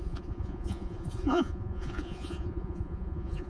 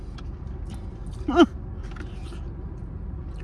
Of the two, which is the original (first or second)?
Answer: second